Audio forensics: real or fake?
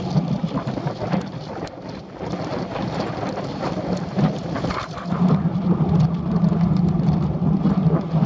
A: fake